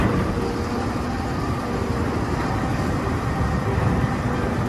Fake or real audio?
real